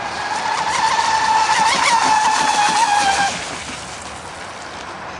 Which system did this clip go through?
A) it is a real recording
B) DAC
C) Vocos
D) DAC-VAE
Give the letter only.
A